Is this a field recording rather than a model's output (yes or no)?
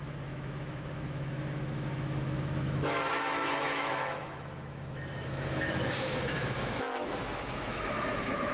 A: no